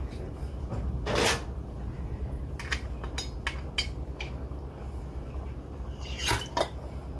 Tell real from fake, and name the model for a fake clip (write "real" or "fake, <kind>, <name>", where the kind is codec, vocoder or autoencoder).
real